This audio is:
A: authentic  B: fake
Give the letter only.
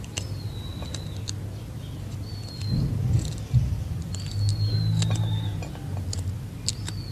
A